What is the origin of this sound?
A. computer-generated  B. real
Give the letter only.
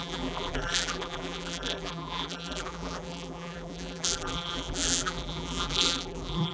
A